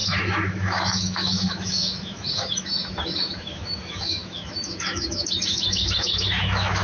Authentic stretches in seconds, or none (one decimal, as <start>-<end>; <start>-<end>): none